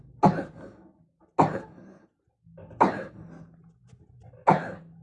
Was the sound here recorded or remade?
recorded